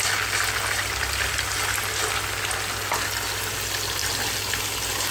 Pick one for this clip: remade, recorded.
recorded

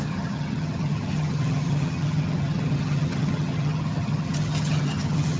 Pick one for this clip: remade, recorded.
remade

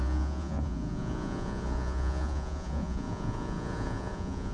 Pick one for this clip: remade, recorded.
remade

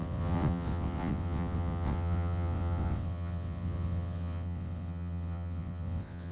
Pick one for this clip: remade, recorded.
remade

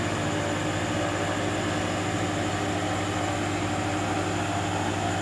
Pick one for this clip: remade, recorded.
recorded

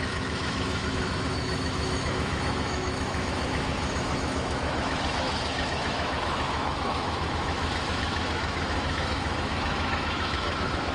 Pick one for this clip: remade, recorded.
remade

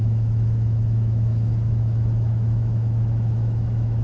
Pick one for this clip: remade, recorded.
remade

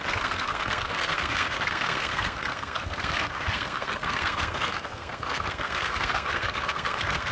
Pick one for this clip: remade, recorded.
remade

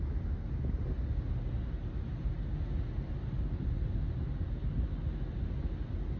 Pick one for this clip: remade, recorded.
recorded